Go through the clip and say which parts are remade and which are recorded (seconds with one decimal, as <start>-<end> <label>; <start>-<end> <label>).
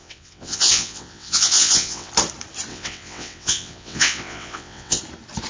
0.0-2.1 remade; 2.1-2.7 recorded; 2.7-5.0 remade; 5.0-5.5 recorded